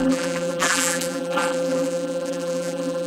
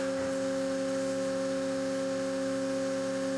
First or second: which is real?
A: second